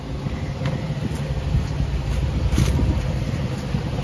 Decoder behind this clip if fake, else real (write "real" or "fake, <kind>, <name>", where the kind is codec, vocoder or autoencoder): real